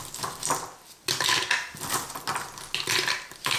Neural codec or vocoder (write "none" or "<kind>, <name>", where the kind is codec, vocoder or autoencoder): none